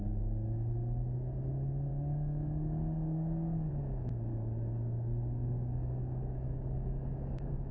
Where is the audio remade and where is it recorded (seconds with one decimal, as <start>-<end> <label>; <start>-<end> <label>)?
0.0-1.9 recorded; 1.9-3.7 remade; 3.7-4.3 recorded; 4.3-7.7 remade